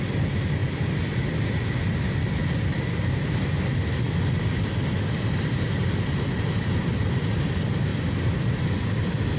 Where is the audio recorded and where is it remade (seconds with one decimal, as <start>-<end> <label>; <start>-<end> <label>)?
0.0-2.4 recorded; 2.4-4.0 remade; 4.0-7.9 recorded; 7.9-9.4 remade